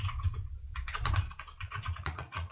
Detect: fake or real fake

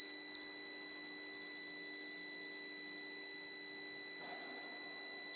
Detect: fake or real real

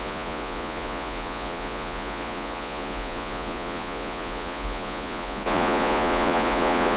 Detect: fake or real fake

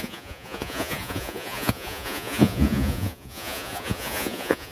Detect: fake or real fake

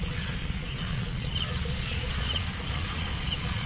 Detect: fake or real fake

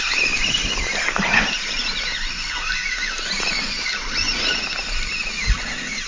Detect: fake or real real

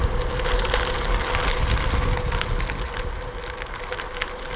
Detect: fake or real real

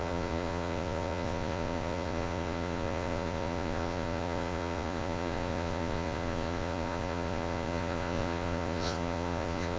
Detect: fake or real fake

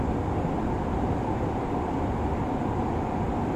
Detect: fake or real real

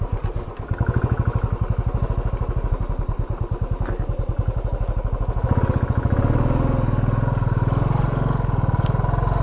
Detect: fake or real real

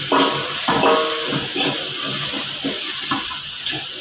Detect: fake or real real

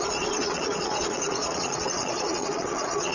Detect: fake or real fake